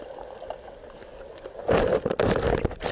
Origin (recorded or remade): recorded